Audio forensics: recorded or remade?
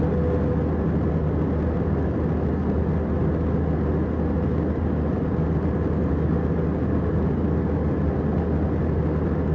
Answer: recorded